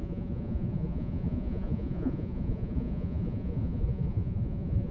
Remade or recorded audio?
remade